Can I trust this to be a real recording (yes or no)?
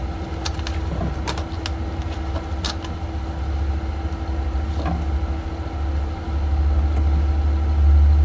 yes